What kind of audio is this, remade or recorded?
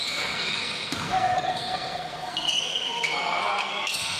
remade